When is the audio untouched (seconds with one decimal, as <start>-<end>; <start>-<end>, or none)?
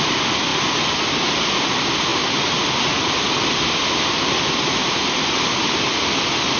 0.0-0.5; 1.7-6.6